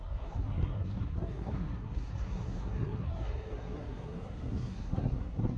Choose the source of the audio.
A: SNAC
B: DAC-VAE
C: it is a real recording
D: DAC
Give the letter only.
A